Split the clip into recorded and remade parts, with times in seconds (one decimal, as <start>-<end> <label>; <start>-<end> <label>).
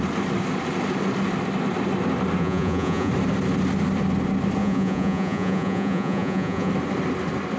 0.0-2.4 recorded; 2.4-3.1 remade; 3.1-4.6 recorded; 4.6-6.7 remade; 6.7-7.6 recorded